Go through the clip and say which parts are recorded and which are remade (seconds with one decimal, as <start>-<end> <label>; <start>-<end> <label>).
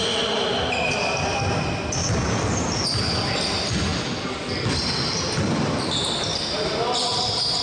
0.0-7.6 recorded